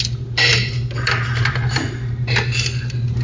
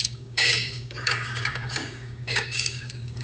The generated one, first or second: second